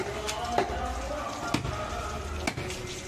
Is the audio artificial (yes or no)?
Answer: no